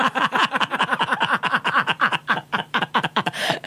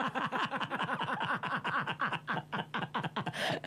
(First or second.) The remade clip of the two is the first